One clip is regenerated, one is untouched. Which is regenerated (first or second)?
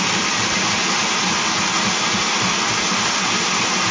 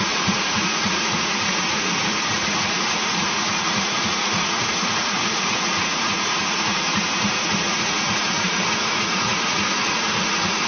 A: second